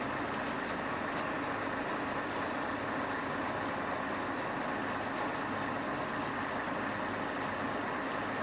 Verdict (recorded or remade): recorded